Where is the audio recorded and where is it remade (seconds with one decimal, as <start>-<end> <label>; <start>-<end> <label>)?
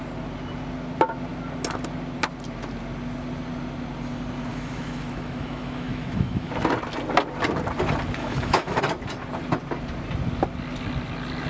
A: 0.0-4.5 recorded; 4.5-6.5 remade; 6.5-8.2 recorded; 8.2-8.8 remade; 8.8-11.5 recorded